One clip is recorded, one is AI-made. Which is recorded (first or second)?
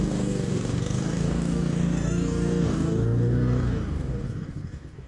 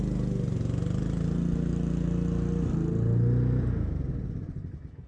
second